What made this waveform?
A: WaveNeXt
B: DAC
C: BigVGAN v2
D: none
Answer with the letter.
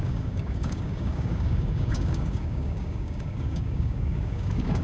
B